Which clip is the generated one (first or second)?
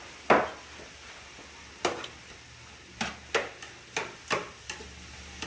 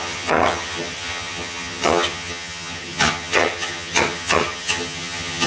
second